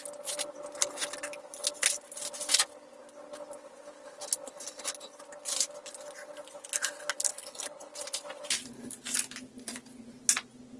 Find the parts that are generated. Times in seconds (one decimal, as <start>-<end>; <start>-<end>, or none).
7.3-7.9